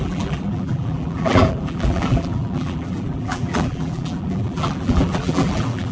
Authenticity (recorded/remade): remade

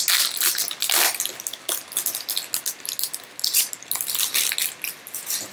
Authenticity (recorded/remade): recorded